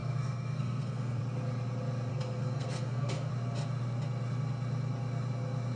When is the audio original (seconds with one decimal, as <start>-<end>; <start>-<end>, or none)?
1.2-2.1; 3.3-5.8